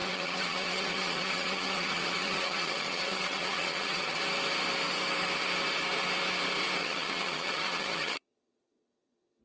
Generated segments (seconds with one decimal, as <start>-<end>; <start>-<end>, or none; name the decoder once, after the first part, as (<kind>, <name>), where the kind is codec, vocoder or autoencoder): 0.0-4.2 (vocoder, HiFi-GAN); 6.8-9.4